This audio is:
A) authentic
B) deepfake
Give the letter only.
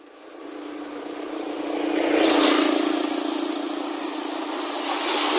A